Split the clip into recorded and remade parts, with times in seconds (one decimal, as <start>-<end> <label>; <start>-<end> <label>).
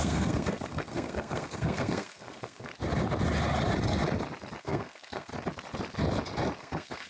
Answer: 0.0-2.7 remade; 2.7-4.6 recorded; 4.6-5.3 remade; 5.3-6.6 recorded; 6.6-7.1 remade